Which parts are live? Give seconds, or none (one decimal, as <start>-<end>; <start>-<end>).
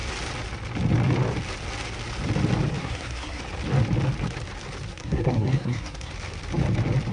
0.0-2.8; 3.4-4.9; 6.1-7.1